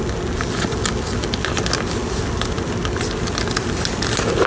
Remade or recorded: recorded